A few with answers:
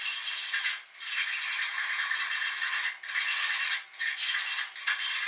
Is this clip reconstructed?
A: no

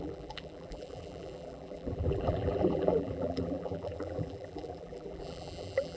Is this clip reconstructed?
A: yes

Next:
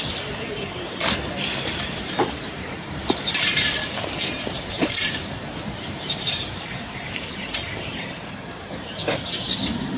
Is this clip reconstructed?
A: yes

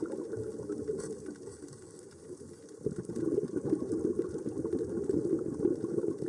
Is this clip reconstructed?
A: no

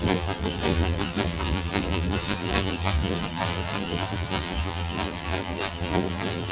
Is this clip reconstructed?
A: yes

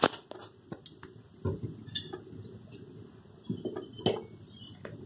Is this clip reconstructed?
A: no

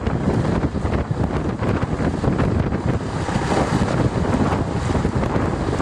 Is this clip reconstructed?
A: no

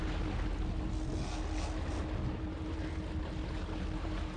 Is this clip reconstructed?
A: no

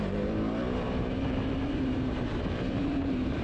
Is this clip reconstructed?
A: yes